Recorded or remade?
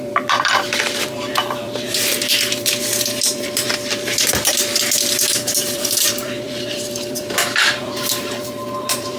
remade